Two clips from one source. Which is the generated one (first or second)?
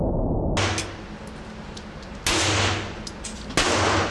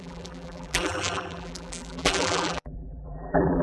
second